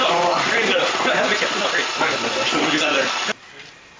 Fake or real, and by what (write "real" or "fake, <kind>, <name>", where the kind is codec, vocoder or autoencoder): real